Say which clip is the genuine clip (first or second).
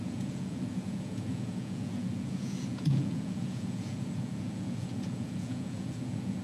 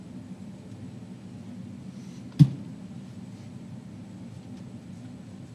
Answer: second